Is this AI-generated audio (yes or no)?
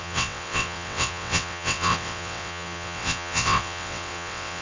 yes